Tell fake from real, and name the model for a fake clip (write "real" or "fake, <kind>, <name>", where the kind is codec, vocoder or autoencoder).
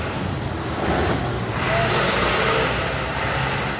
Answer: real